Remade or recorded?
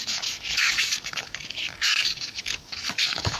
remade